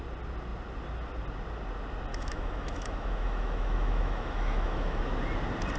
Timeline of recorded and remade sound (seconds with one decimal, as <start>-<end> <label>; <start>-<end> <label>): 0.0-2.1 recorded; 2.1-5.0 remade; 5.0-5.8 recorded